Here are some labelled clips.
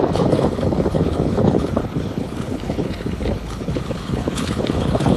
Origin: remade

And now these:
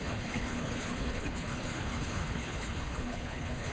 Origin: remade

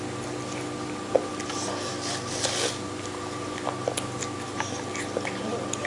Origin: recorded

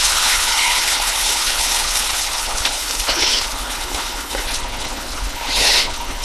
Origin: remade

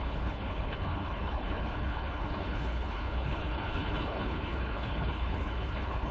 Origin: remade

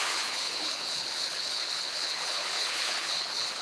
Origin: remade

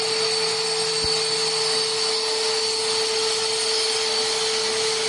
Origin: recorded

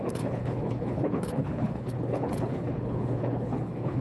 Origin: remade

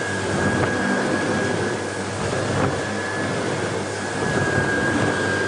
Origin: recorded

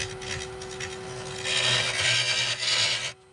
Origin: recorded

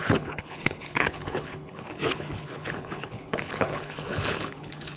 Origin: remade